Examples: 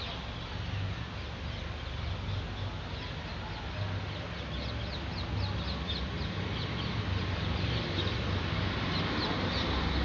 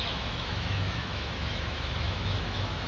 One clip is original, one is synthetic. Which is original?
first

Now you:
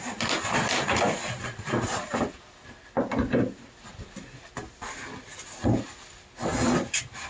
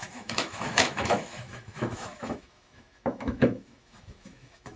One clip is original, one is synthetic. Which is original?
first